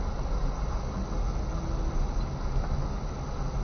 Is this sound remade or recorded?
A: recorded